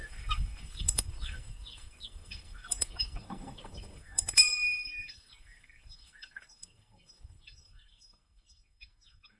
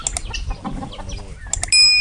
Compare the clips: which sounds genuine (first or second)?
second